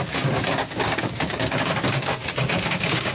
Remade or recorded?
remade